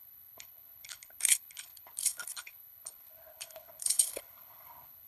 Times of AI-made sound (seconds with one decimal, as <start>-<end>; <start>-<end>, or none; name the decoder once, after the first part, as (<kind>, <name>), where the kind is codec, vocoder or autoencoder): 0.0-5.1 (codec, HILCodec)